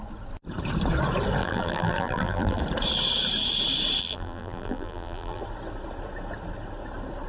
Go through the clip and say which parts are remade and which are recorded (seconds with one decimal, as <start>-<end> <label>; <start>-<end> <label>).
0.0-1.4 recorded; 1.4-2.6 remade; 2.6-4.0 recorded; 4.0-5.4 remade; 5.4-7.3 recorded